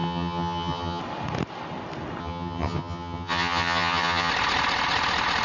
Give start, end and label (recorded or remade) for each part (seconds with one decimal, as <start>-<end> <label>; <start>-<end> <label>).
0.0-1.0 remade; 1.0-2.2 recorded; 2.2-4.3 remade; 4.3-5.4 recorded